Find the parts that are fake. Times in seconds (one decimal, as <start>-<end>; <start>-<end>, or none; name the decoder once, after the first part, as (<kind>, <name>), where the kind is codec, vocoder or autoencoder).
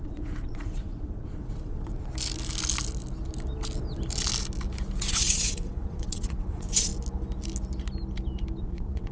0.0-2.0 (vocoder, WaveNeXt); 5.0-6.9; 8.6-9.1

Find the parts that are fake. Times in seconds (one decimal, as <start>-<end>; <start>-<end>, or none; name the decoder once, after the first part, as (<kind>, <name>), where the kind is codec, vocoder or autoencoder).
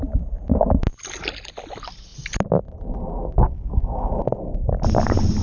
none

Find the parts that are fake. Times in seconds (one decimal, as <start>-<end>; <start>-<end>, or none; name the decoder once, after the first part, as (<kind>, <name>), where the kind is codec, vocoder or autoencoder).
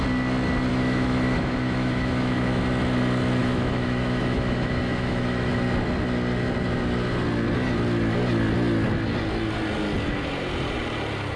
0.7-2.6 (autoencoder, DAC-VAE); 3.4-5.5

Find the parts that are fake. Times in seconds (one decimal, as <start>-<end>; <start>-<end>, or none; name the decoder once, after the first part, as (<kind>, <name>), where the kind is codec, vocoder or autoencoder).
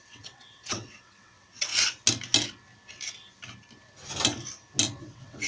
0.0-1.7 (vocoder, WaveNeXt); 5.0-5.5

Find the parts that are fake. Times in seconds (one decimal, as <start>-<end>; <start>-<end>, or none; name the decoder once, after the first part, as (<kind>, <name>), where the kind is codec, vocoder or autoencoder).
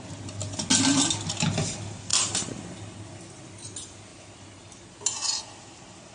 none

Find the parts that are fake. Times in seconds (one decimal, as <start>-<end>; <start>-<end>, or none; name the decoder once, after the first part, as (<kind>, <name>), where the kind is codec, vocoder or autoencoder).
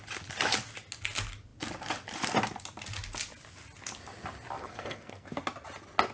4.6-5.3 (codec, SNAC)